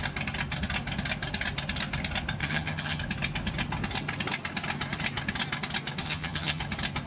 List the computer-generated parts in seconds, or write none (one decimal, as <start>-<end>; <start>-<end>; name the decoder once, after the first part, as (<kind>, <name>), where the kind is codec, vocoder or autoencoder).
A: 2.4-3.0 (vocoder, HiFi-GAN); 6.0-6.6